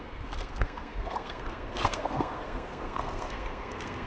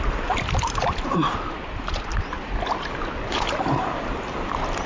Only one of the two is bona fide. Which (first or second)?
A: second